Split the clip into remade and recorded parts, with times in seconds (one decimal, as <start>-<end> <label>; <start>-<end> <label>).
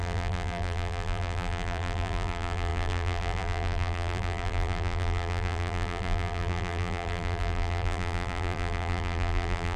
0.0-9.8 remade